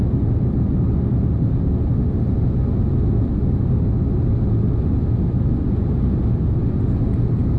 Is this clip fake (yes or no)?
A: no